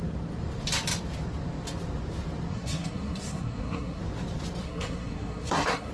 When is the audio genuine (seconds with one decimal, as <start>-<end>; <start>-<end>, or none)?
0.0-2.5; 4.0-4.6